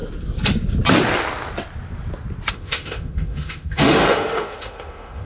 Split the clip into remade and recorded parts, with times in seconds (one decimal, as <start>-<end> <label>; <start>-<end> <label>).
0.0-2.5 recorded; 2.5-5.3 remade

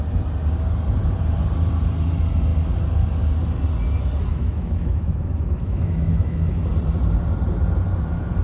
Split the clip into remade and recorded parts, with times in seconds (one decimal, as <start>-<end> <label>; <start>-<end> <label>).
0.0-4.3 recorded; 4.3-6.7 remade; 6.7-8.4 recorded